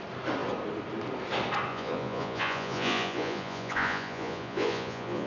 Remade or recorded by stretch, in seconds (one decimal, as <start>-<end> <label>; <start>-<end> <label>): 0.0-1.7 recorded; 1.7-5.3 remade